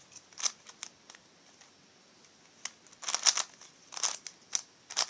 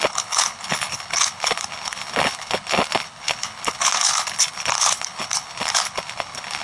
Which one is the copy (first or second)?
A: second